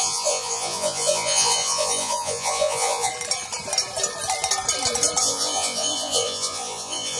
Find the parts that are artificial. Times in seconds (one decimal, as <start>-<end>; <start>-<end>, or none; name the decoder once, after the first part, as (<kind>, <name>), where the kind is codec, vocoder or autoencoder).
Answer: 0.0-3.1 (vocoder, Vocos); 5.2-7.2